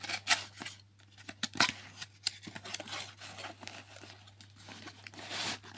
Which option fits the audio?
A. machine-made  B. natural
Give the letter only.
B